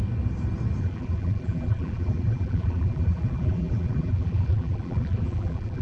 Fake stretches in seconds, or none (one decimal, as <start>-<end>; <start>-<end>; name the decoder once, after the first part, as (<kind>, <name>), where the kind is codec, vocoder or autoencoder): 0.8-5.8 (vocoder, BigVGAN v2)